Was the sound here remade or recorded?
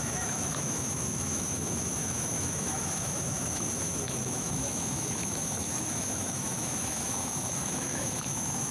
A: remade